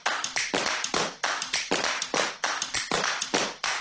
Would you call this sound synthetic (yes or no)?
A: no